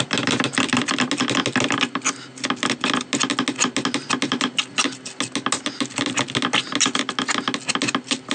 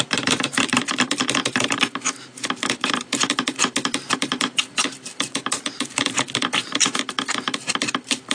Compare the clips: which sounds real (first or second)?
first